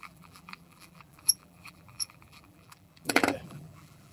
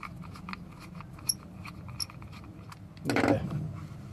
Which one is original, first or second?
second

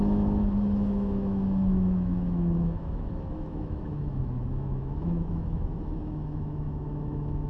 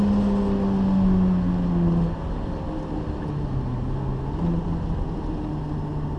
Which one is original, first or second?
second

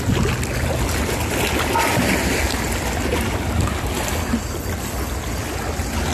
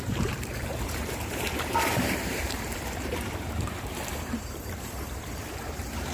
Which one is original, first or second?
first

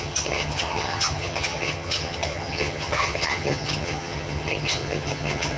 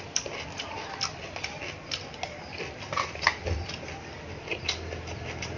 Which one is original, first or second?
second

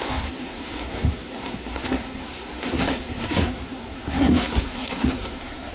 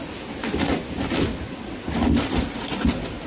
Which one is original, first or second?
second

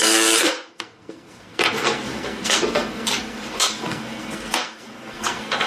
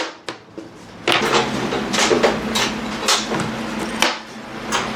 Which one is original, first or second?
second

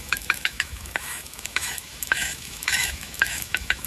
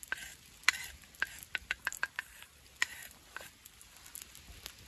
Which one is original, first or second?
second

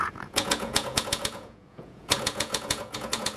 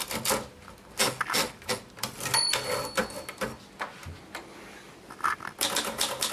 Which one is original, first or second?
second